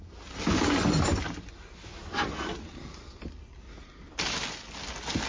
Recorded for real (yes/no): yes